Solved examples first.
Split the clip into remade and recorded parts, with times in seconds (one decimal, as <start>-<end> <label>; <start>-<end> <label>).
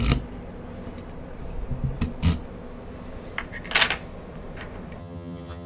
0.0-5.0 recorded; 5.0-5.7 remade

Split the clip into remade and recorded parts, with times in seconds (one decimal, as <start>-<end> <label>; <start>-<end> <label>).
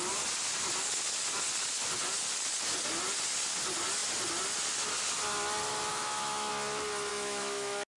0.0-5.9 recorded; 5.9-6.5 remade; 6.5-7.1 recorded; 7.1-8.0 remade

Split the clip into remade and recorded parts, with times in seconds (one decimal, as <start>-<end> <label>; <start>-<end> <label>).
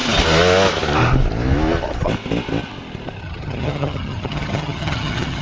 0.0-3.2 recorded; 3.2-5.4 remade